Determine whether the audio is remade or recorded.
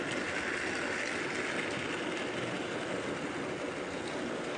recorded